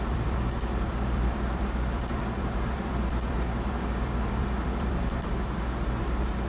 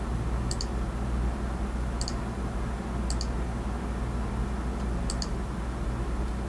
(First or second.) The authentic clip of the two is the second